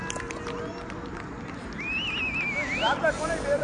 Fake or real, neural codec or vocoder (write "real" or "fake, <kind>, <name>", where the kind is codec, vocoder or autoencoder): real